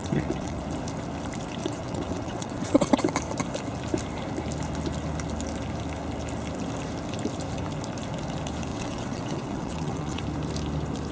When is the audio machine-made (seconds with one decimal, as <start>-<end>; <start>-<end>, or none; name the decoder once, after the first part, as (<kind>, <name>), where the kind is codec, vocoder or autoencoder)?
0.0-0.6 (vocoder, WaveNeXt); 1.6-3.0; 8.7-10.2